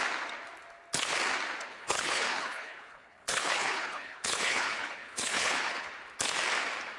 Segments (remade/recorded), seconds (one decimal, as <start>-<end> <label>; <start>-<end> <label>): 0.0-1.7 recorded; 1.7-5.9 remade; 5.9-7.0 recorded